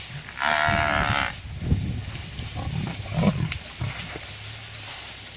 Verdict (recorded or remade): recorded